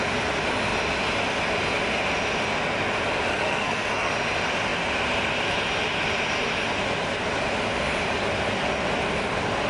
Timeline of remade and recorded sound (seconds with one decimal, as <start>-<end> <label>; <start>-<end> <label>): 0.0-3.3 recorded; 3.3-4.1 remade; 4.1-9.7 recorded